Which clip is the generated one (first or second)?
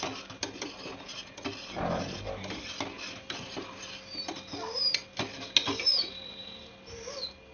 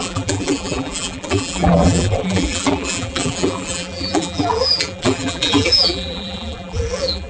second